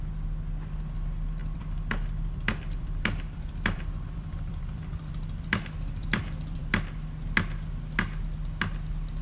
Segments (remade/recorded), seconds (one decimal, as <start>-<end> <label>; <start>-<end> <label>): 0.0-1.4 recorded; 1.4-5.6 remade; 5.6-6.0 recorded; 6.0-6.7 remade; 6.7-9.2 recorded